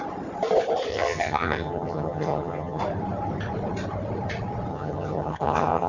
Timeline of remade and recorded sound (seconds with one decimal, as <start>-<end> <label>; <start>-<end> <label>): 0.0-0.9 recorded; 0.9-2.8 remade; 2.8-4.7 recorded; 4.7-5.9 remade